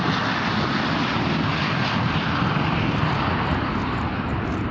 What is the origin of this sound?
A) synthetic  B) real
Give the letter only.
A